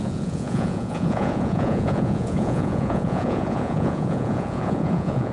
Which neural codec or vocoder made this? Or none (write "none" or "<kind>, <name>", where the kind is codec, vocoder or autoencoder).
vocoder, Vocos